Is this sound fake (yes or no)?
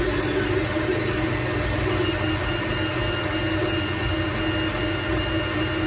no